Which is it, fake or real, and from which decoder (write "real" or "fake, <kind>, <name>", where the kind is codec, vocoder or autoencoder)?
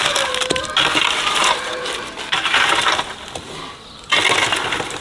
real